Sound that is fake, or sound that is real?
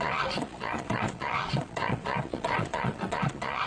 fake